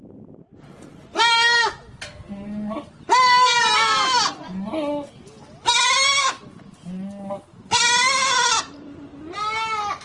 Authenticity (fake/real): real